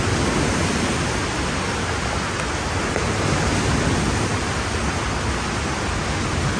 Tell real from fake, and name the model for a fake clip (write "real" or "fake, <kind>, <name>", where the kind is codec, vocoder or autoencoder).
real